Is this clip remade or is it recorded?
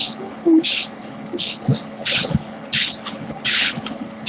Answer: remade